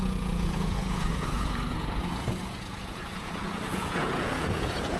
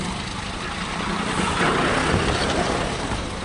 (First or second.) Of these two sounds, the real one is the second